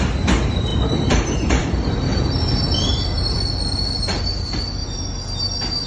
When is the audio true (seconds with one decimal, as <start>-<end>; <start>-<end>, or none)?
4.8-5.9